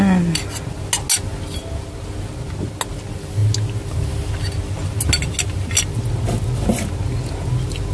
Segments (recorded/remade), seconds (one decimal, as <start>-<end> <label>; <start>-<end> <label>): 0.0-7.9 recorded